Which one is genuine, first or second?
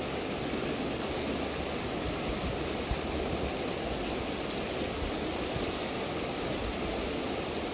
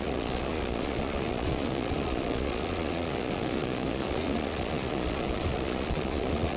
first